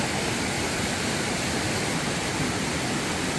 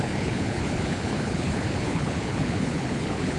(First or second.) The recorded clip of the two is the first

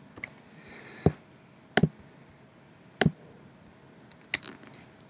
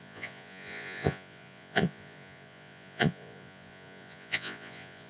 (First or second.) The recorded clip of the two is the first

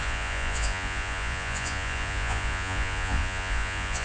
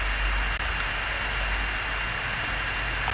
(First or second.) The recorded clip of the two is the second